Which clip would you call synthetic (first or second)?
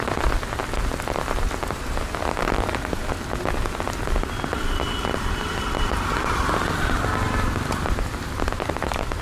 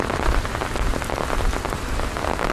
first